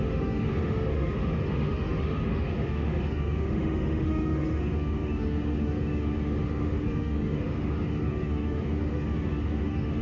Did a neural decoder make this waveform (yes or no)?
yes